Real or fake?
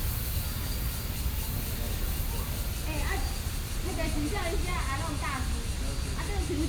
real